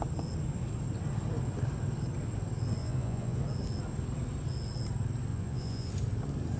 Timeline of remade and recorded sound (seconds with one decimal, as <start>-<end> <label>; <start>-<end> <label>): 0.0-2.8 recorded; 2.8-3.4 remade; 3.4-5.3 recorded; 5.3-5.9 remade; 5.9-6.6 recorded